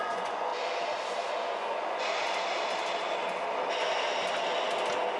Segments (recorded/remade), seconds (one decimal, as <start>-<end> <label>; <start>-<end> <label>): 0.0-0.5 remade; 0.5-1.4 recorded; 1.4-2.1 remade; 2.1-5.2 recorded